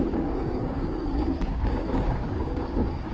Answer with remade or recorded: remade